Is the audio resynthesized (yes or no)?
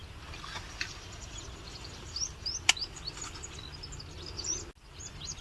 no